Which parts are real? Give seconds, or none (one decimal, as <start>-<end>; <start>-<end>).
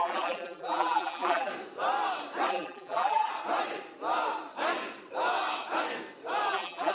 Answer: 1.5-2.5; 3.3-6.5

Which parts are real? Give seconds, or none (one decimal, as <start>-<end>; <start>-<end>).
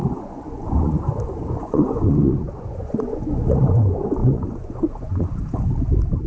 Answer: 3.8-4.2; 5.6-6.3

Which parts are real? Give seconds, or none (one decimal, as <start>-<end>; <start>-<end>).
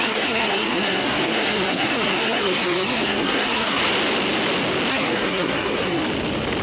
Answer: 3.8-4.9; 6.0-6.6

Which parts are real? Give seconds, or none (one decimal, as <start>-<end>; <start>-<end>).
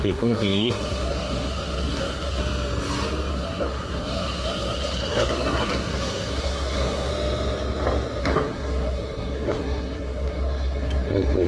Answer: 2.4-3.3; 7.1-8.2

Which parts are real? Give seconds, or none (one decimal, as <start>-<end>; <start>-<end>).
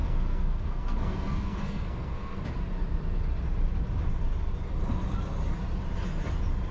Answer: 2.4-6.7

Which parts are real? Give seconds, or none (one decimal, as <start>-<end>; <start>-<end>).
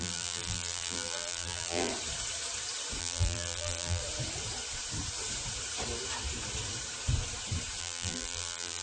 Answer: 1.9-3.0; 4.0-7.8